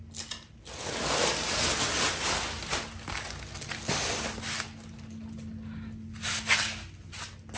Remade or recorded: recorded